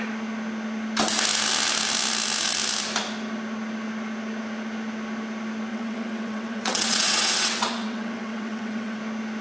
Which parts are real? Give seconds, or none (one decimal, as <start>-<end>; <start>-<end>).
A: 0.0-5.7; 9.0-9.4